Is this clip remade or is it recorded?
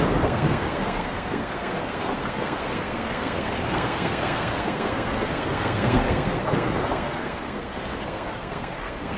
remade